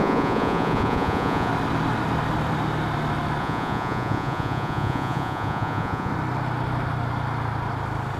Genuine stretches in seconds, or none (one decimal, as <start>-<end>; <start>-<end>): 1.5-3.4; 6.1-8.2